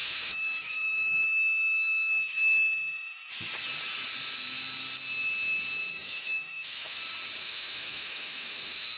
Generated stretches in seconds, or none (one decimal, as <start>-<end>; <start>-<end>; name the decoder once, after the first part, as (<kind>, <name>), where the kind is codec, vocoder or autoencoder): 0.0-3.3 (autoencoder, DAC-VAE); 5.9-7.0; 7.4-9.0